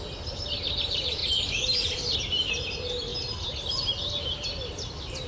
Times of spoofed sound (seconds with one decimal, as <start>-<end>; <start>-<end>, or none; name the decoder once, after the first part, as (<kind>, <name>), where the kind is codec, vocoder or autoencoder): none